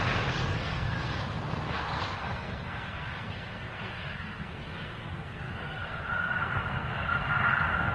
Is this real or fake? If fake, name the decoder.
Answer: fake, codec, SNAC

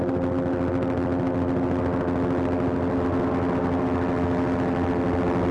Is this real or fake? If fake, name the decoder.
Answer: real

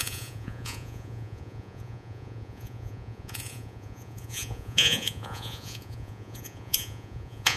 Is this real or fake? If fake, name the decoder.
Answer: fake, vocoder, Vocos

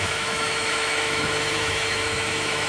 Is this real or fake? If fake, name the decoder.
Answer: fake, autoencoder, DAC-VAE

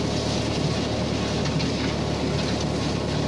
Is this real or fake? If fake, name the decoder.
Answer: real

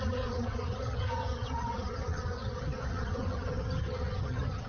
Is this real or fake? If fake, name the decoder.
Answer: fake, vocoder, HiFi-GAN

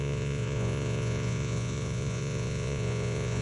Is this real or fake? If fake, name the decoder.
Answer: fake, vocoder, Vocos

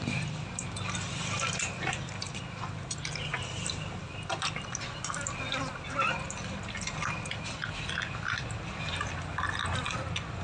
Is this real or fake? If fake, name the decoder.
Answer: real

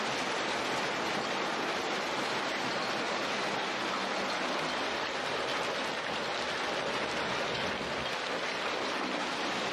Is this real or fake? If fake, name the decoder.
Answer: real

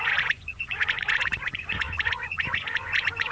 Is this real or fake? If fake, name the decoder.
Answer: fake, vocoder, Vocos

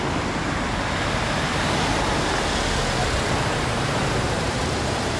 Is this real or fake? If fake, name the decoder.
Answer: fake, vocoder, BigVGAN v2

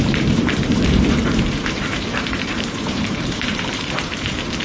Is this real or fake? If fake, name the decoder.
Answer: fake, vocoder, BigVGAN v2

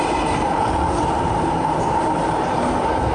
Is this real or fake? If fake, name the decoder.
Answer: fake, vocoder, BigVGAN v2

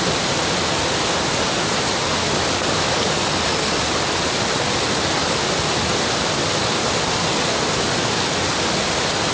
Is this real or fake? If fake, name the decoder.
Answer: real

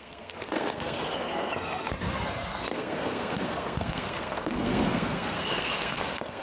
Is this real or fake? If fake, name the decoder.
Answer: fake, codec, SNAC